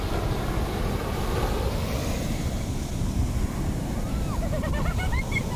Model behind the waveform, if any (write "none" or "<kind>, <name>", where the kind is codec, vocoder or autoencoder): vocoder, BigVGAN v2